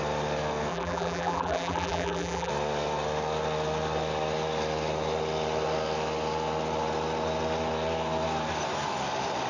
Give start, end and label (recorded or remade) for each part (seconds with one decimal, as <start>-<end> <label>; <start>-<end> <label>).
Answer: 0.0-0.7 recorded; 0.7-2.5 remade; 2.5-9.5 recorded